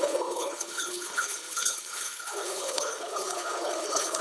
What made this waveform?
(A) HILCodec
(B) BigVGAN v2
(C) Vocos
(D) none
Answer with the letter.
A